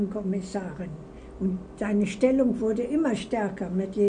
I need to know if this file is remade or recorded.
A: recorded